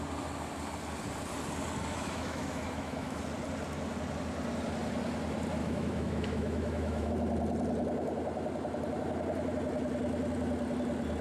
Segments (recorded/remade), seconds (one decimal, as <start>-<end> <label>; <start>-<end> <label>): 0.0-1.9 recorded; 1.9-3.2 remade; 3.2-5.6 recorded; 5.6-7.1 remade; 7.1-11.2 recorded